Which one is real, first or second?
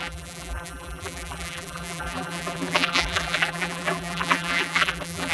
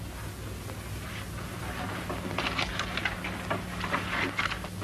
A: second